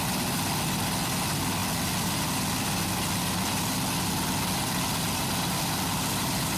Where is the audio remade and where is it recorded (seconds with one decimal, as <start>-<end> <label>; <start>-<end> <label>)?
0.0-6.6 recorded